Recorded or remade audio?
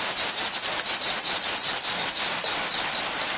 recorded